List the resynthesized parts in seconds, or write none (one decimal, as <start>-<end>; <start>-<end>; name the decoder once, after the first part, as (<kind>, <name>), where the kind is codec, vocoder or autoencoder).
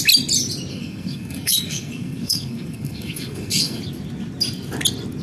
0.7-3.8 (codec, SNAC)